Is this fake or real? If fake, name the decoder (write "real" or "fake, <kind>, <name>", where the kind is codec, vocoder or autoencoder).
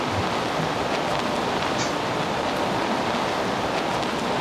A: fake, vocoder, BigVGAN v2